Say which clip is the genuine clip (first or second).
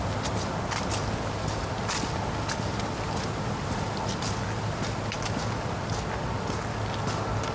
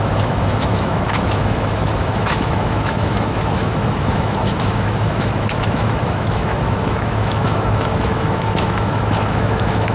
first